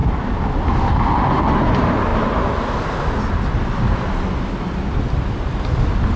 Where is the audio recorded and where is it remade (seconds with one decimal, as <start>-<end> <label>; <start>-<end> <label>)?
0.0-6.2 recorded